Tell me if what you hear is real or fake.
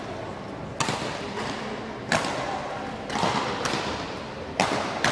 real